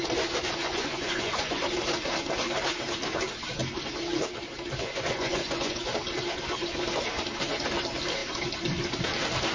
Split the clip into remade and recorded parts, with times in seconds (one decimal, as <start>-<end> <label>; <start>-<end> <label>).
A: 0.0-0.6 recorded; 0.6-1.6 remade; 1.6-4.8 recorded; 4.8-5.8 remade; 5.8-9.5 recorded